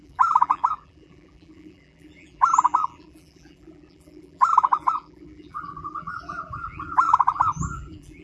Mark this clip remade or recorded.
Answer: remade